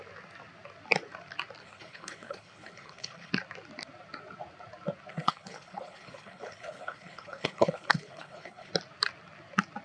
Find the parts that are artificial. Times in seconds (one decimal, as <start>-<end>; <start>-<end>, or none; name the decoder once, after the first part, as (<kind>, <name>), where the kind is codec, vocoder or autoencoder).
1.6-3.3 (codec, HILCodec); 5.1-8.7